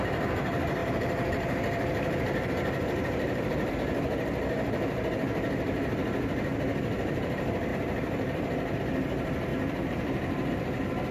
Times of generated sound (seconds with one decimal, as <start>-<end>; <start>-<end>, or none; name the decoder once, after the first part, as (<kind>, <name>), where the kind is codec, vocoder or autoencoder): 0.8-3.7 (vocoder, BigVGAN v2); 7.7-8.8; 9.5-10.5